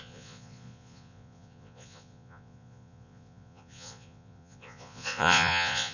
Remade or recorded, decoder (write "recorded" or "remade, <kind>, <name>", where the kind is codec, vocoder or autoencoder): remade, vocoder, Vocos